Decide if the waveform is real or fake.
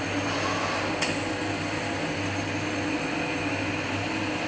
real